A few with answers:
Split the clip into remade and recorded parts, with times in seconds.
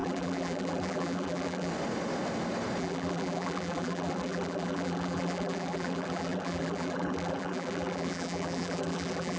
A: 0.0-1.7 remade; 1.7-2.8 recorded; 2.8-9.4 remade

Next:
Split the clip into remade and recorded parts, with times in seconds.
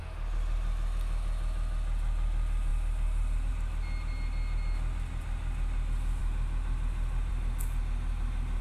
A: 0.0-2.7 recorded; 2.7-3.5 remade; 3.5-8.6 recorded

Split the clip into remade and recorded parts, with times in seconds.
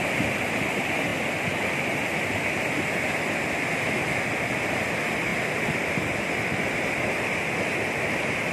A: 0.0-8.5 recorded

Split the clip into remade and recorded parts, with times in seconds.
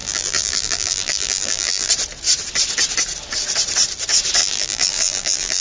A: 0.0-1.9 remade; 1.9-4.4 recorded; 4.4-5.6 remade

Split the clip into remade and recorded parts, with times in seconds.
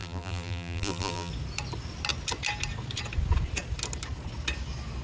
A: 0.0-1.3 remade; 1.3-5.0 recorded